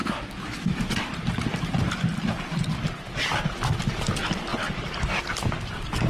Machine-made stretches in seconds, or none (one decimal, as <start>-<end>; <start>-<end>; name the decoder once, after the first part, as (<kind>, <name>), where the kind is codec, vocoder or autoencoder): 0.0-0.9 (autoencoder, DAC-VAE)